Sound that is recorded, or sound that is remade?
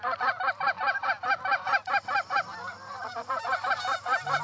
remade